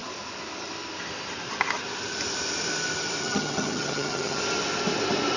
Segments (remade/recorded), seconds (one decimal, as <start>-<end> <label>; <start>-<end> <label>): 0.0-3.2 recorded; 3.2-4.4 remade; 4.4-5.4 recorded